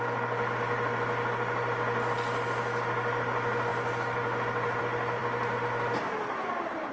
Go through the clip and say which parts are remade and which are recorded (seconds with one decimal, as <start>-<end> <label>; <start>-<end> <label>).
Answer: 0.0-6.9 recorded